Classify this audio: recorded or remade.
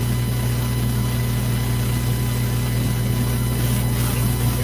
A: recorded